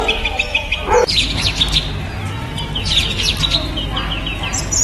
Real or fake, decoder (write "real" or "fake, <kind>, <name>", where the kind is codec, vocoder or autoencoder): real